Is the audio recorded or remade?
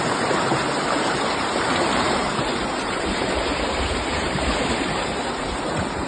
remade